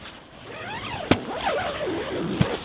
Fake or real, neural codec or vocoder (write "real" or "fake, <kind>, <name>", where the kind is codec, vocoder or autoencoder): real